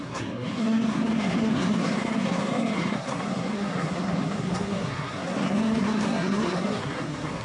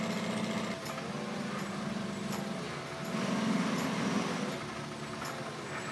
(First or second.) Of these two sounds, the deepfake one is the first